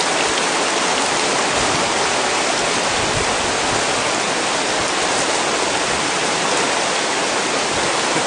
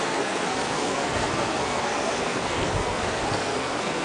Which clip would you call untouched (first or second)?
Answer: first